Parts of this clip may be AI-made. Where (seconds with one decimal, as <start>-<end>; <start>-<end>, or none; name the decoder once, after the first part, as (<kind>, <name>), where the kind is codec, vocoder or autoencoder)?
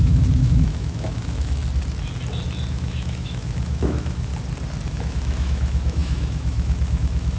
0.0-1.6 (autoencoder, DAC-VAE); 2.7-4.3; 4.9-7.4